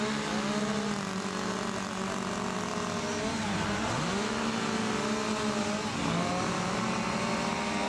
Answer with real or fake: real